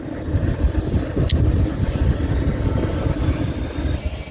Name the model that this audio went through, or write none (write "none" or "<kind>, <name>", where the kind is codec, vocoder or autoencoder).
none